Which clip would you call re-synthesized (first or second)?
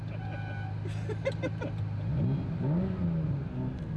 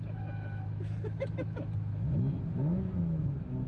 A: second